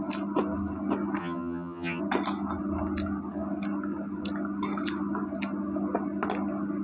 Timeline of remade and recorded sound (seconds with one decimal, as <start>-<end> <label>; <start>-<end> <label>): 0.0-1.2 recorded; 1.2-2.0 remade; 2.0-6.8 recorded

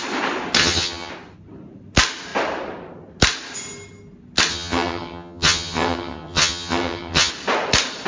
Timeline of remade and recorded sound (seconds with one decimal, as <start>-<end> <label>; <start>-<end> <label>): 0.0-0.6 recorded; 0.6-1.1 remade; 1.1-4.5 recorded; 4.5-7.3 remade; 7.3-8.1 recorded

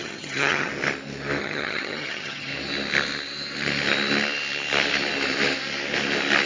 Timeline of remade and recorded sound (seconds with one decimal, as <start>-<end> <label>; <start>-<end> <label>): 0.0-0.7 remade; 0.7-1.4 recorded; 1.4-2.5 remade; 2.5-6.5 recorded